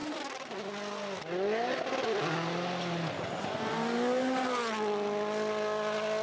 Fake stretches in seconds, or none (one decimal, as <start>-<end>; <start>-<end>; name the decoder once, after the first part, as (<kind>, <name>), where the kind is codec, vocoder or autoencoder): none